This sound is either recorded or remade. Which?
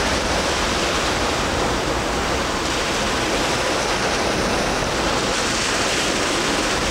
recorded